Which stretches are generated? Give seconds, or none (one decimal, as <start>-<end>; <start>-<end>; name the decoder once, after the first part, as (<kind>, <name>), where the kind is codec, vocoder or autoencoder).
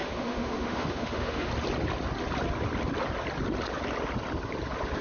0.0-1.5 (autoencoder, DAC-VAE)